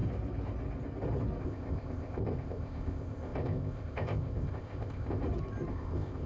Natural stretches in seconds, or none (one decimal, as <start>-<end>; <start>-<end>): 0.0-1.4; 5.2-5.7